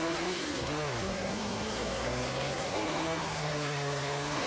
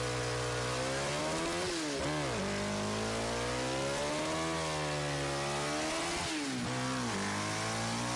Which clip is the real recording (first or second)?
second